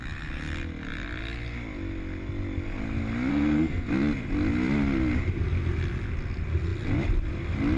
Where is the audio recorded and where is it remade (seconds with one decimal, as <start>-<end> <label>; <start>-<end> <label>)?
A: 0.0-3.3 recorded; 3.3-3.9 remade; 3.9-7.8 recorded